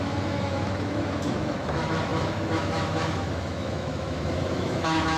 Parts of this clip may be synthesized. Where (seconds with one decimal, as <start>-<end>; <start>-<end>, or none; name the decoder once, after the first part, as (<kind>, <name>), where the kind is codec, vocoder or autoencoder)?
0.0-5.2 (autoencoder, DAC-VAE)